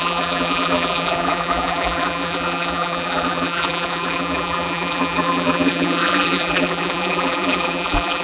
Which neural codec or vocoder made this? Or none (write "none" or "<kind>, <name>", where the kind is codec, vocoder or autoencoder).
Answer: vocoder, BigVGAN v2